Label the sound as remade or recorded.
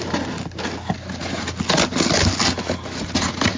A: recorded